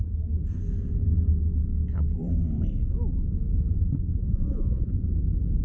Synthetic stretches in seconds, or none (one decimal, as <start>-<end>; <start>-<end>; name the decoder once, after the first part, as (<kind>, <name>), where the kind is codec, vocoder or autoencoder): 4.2-4.9 (vocoder, Vocos)